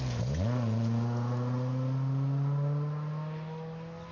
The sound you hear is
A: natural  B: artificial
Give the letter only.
A